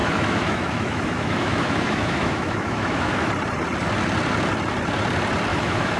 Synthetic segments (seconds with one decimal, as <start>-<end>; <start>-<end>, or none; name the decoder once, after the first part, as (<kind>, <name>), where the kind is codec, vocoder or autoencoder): 0.0-3.3 (autoencoder, DAC-VAE); 5.5-6.0